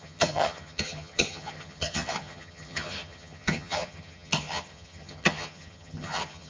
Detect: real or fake fake